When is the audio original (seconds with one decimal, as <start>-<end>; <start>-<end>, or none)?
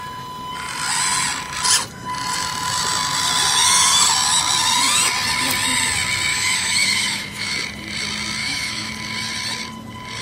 0.0-6.3; 7.5-8.4; 8.9-10.2